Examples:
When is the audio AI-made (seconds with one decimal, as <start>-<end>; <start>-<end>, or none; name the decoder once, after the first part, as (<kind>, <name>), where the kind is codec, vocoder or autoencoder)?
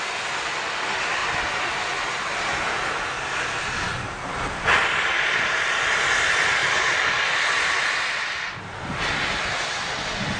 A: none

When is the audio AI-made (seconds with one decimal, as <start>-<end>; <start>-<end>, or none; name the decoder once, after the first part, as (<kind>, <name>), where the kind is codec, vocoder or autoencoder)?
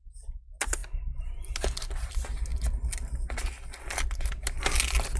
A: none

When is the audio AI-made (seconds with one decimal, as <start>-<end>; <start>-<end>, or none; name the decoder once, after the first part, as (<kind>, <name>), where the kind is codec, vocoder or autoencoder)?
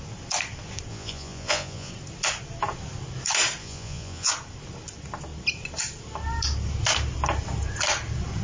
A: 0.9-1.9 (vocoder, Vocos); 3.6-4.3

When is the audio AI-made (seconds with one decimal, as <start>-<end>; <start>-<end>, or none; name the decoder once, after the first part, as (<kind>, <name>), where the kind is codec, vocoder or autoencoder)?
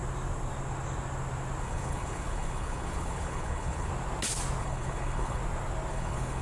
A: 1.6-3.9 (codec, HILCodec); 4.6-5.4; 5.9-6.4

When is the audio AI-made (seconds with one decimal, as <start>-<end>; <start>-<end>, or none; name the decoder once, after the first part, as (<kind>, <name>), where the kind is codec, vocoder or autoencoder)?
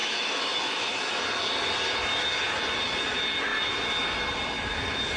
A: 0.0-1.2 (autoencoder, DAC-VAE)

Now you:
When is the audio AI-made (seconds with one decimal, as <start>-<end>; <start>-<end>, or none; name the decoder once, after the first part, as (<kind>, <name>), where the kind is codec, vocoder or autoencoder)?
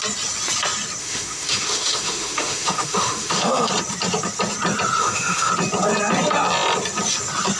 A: 1.0-3.7 (autoencoder, DAC-VAE); 5.0-5.5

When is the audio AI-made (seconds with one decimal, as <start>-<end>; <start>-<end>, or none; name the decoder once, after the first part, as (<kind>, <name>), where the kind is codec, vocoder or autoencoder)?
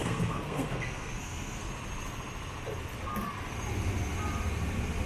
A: 0.0-1.6 (codec, SNAC)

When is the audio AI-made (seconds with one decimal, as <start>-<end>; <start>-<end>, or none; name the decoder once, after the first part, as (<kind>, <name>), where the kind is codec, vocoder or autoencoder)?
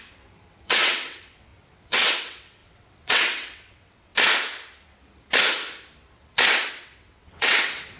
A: 0.0-4.1 (vocoder, WaveNeXt); 6.7-8.0